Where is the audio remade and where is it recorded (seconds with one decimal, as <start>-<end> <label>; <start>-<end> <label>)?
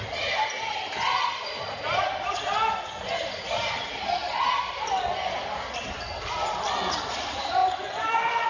0.0-7.6 recorded; 7.6-8.5 remade